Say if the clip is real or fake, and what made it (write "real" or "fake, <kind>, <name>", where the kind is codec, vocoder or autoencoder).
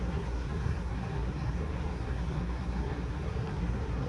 fake, codec, SNAC